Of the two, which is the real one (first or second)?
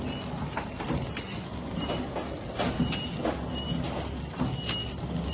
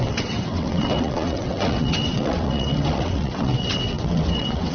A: first